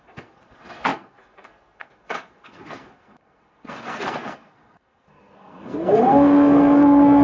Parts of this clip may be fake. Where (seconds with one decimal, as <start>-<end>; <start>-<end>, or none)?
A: 0.0-7.2